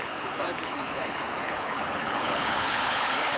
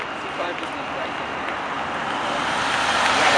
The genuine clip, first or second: second